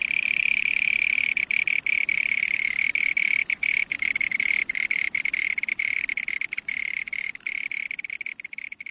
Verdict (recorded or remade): remade